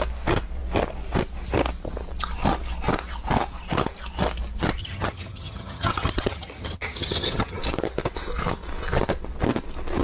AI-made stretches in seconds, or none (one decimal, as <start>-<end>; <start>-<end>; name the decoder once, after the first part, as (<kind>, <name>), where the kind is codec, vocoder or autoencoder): 4.8-7.6 (vocoder, HiFi-GAN)